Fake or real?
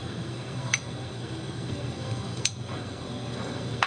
fake